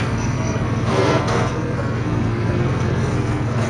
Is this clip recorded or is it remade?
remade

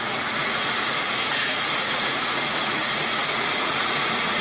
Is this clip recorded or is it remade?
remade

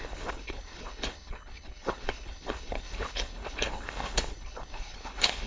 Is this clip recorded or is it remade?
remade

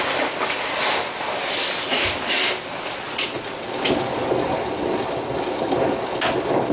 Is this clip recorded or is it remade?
recorded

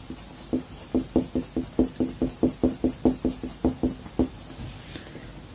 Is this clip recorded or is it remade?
recorded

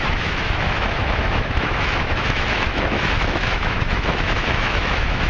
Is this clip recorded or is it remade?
remade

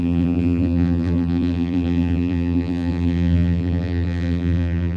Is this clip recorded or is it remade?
remade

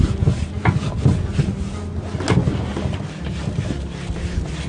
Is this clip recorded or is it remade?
recorded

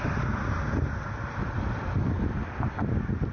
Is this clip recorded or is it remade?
recorded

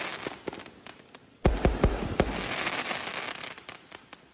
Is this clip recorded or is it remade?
recorded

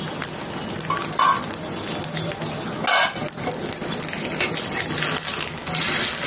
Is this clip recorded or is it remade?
recorded